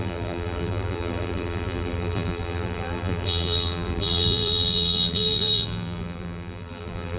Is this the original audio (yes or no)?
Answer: no